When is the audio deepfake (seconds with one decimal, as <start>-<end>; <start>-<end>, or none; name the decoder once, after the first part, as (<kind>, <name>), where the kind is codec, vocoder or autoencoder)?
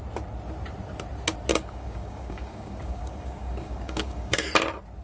1.5-4.5 (codec, DAC)